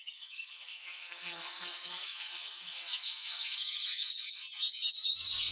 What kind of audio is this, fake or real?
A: fake